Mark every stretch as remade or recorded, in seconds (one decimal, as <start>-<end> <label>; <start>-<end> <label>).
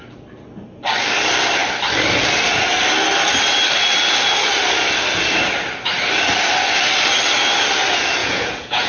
0.0-8.2 recorded; 8.2-8.9 remade